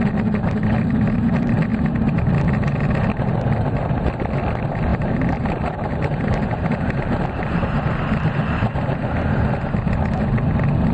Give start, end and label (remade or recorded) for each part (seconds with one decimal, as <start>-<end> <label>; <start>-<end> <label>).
0.0-4.9 recorded; 4.9-7.8 remade; 7.8-10.9 recorded